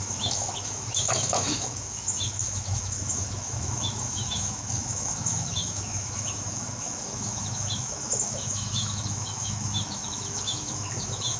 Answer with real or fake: fake